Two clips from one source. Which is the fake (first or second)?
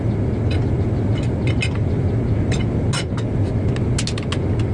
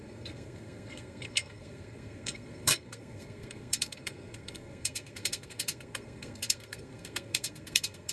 second